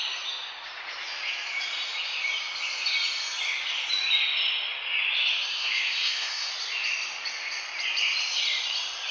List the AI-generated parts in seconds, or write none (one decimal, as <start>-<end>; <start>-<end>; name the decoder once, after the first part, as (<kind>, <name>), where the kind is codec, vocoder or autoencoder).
5.5-6.5 (codec, SNAC)